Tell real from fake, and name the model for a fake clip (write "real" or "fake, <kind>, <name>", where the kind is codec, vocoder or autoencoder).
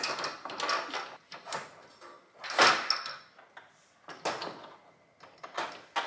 real